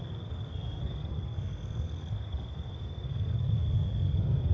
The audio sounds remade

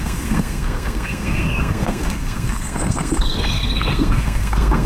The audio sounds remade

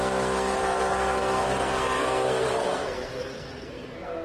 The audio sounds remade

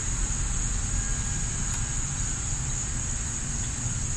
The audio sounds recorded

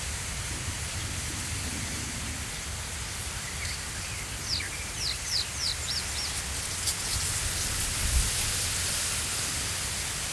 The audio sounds recorded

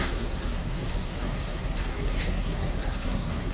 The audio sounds remade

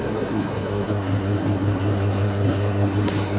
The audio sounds remade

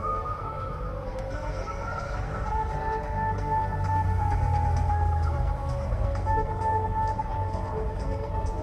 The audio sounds remade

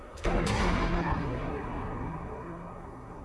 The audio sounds remade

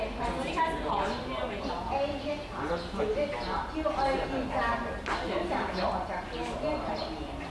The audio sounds recorded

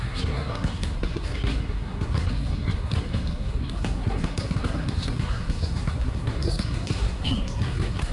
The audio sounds remade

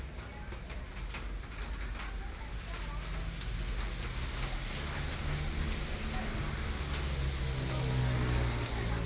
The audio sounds recorded